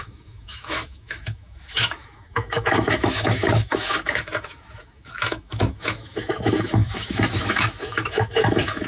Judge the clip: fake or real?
fake